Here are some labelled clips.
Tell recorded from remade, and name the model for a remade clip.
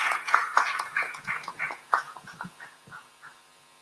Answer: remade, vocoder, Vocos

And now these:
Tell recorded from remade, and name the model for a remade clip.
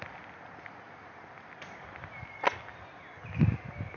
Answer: recorded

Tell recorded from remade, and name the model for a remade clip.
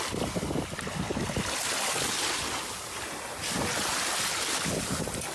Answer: recorded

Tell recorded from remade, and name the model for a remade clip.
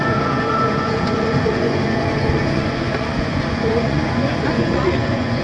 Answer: remade, vocoder, Vocos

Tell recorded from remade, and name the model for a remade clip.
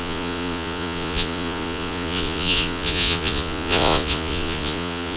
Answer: remade, vocoder, Vocos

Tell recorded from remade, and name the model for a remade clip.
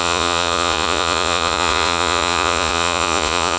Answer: remade, vocoder, Vocos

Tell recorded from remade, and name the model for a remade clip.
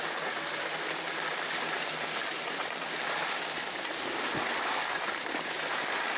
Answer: recorded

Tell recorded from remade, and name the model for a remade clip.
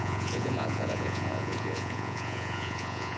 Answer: remade, vocoder, Vocos